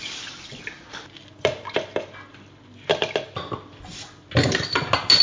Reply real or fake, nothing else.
real